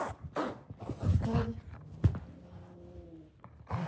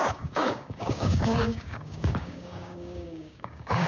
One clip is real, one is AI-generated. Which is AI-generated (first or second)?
second